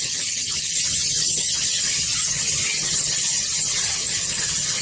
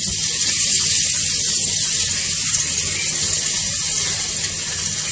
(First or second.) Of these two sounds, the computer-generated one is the first